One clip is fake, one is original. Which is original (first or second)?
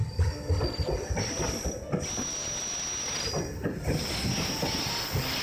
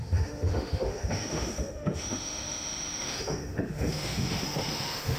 first